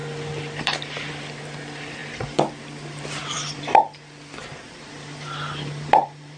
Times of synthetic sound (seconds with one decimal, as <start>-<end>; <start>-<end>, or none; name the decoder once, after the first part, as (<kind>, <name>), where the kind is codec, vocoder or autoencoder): 0.6-2.0 (vocoder, BigVGAN v2); 2.6-3.2; 4.4-6.4